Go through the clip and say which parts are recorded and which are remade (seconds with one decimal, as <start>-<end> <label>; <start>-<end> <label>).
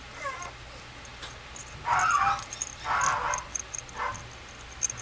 0.0-5.0 recorded